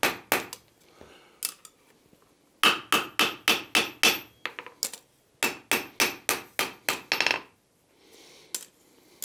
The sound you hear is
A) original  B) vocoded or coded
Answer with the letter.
A